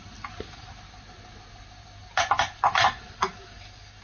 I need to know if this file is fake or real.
real